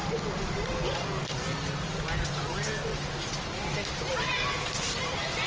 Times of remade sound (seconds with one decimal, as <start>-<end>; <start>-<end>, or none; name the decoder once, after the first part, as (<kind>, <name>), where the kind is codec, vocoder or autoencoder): none